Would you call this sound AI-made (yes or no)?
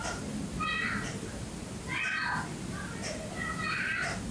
no